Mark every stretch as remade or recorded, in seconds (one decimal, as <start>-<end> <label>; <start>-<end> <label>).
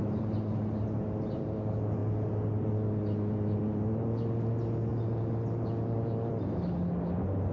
0.0-1.6 remade; 1.6-7.5 recorded